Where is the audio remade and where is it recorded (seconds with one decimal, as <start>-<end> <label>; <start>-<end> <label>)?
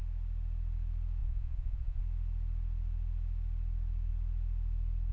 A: 0.0-1.2 recorded; 1.2-2.0 remade; 2.0-5.1 recorded